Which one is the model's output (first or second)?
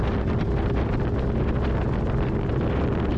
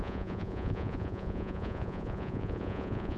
second